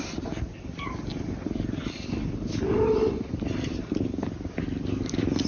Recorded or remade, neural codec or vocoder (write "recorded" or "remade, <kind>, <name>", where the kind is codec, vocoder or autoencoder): recorded